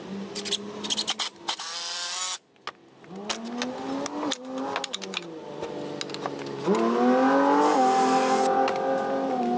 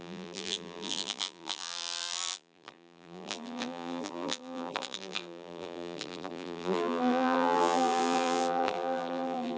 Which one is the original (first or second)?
first